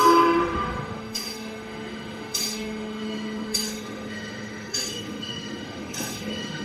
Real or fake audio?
fake